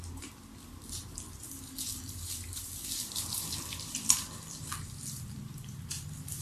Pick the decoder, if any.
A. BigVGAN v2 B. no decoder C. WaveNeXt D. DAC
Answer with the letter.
A